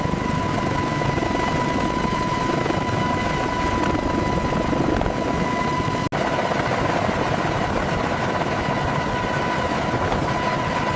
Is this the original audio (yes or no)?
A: yes